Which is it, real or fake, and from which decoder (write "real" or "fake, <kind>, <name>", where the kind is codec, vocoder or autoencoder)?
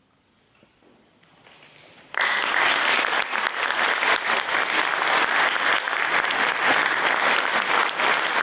real